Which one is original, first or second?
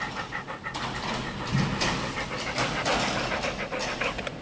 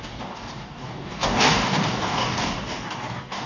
first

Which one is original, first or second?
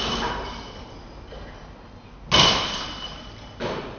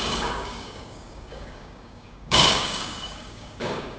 first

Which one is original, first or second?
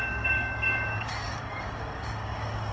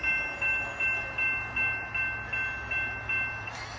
second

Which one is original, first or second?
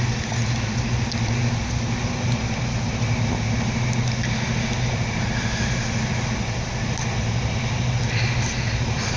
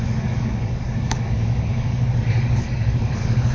first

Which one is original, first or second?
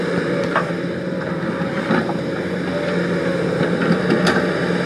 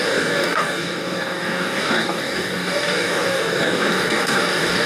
first